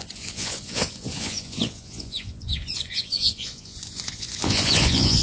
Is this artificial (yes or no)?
yes